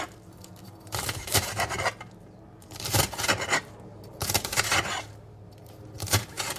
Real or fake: fake